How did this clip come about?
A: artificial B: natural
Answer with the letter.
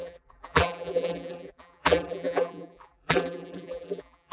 A